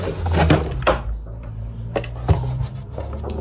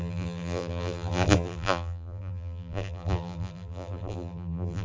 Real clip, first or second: first